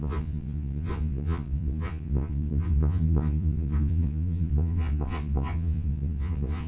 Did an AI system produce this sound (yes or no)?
yes